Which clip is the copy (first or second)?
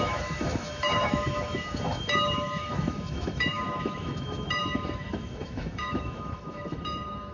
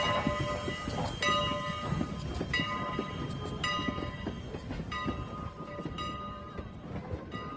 first